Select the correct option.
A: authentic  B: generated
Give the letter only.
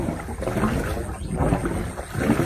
A